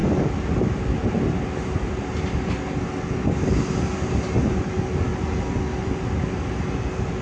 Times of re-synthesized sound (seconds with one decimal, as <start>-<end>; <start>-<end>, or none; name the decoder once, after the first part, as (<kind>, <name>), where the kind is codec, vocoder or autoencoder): 0.0-2.8 (vocoder, BigVGAN v2); 5.1-6.2